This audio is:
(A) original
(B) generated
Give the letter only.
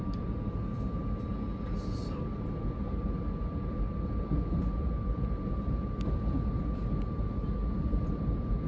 A